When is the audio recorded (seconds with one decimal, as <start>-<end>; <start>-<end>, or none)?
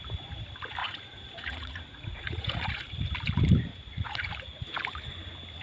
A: 0.0-0.8; 2.9-3.7; 4.3-5.6